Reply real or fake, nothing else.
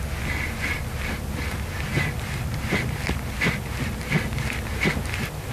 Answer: real